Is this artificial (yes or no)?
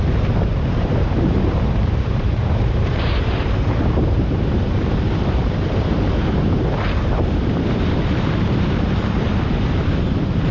yes